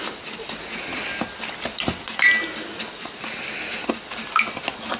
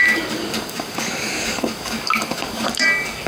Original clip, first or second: first